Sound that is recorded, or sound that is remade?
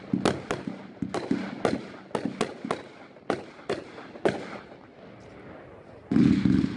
recorded